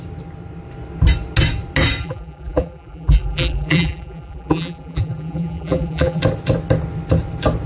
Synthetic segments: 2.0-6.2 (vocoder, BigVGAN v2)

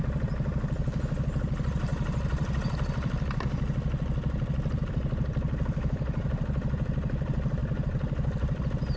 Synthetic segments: 7.6-8.6 (vocoder, BigVGAN v2)

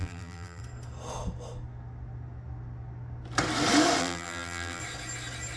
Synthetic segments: 0.0-0.6 (vocoder, BigVGAN v2); 4.0-4.8

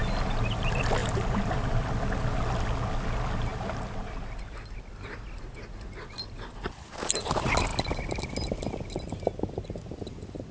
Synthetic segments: 1.0-1.5 (vocoder, BigVGAN v2)

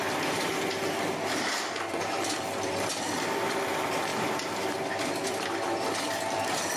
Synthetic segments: 0.0-0.5 (vocoder, BigVGAN v2); 1.9-6.8

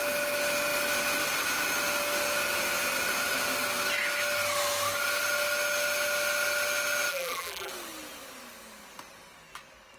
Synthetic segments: 7.1-7.7 (vocoder, BigVGAN v2)